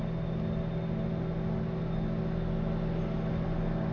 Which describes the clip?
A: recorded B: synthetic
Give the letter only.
A